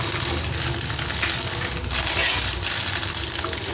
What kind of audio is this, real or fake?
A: real